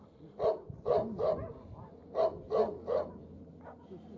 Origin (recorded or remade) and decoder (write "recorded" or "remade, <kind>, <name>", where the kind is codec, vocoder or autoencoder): recorded